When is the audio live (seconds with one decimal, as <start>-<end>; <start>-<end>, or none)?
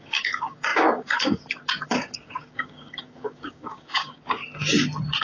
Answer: 4.4-5.2